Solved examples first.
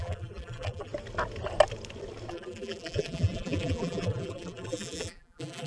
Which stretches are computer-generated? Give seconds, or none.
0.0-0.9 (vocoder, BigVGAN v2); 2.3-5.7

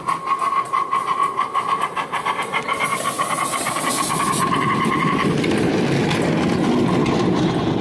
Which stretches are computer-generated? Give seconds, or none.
1.0-5.7 (vocoder, BigVGAN v2)

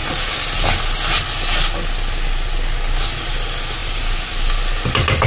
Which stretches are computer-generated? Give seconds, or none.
none

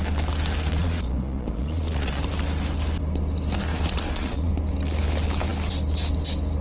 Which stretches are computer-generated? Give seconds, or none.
0.8-2.2 (vocoder, Vocos); 3.7-4.5